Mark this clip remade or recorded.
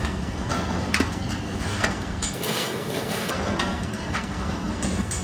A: remade